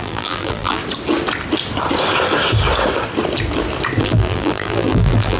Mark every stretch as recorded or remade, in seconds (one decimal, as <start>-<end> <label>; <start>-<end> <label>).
0.0-0.8 remade; 0.8-4.0 recorded; 4.0-5.4 remade